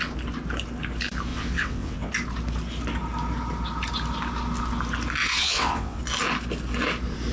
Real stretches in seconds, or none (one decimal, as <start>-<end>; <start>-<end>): 0.0-1.3; 2.1-5.2; 6.0-7.3